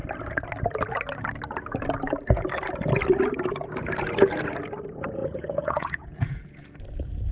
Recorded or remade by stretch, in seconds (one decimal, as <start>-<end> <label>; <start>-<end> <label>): 0.0-5.2 recorded; 5.2-6.8 remade; 6.8-7.3 recorded